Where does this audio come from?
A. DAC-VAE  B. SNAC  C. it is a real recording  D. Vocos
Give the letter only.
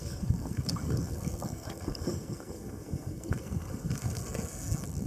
B